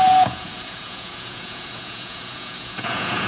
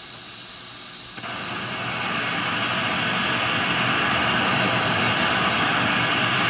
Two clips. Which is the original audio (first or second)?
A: second